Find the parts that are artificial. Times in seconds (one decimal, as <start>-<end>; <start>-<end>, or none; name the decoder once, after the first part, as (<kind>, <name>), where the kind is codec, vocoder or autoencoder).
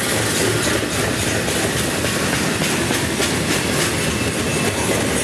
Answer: none